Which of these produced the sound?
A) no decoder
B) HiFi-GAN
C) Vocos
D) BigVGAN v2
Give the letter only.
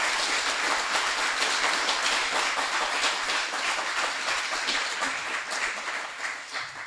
A